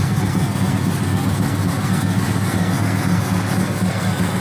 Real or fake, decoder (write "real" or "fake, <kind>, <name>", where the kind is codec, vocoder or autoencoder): fake, codec, SNAC